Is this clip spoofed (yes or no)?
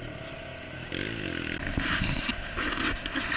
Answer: no